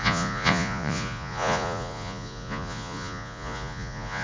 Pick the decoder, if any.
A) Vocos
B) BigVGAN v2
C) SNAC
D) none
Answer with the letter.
A